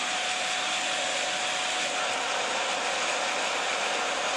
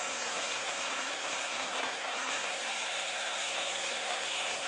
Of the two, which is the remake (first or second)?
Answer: second